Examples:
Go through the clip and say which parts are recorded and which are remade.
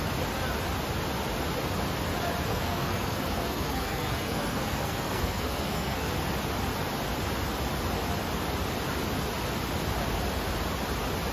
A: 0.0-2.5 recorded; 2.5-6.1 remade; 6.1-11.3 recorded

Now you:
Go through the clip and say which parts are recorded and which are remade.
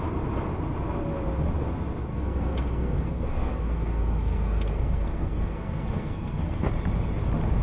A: 0.0-2.1 recorded; 2.1-6.7 remade; 6.7-7.6 recorded